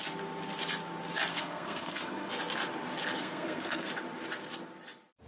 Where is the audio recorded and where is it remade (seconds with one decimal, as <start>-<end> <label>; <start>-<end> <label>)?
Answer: 0.0-1.3 recorded; 1.3-2.3 remade; 2.3-3.2 recorded; 3.2-3.9 remade; 3.9-5.3 recorded